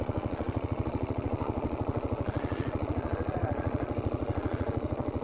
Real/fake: fake